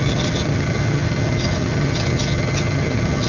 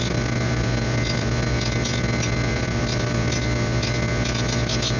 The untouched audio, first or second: second